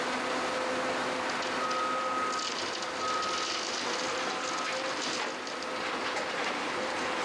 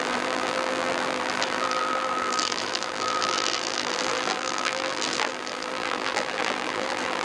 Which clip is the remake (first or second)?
second